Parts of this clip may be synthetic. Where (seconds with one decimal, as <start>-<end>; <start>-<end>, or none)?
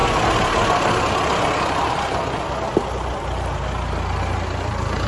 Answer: none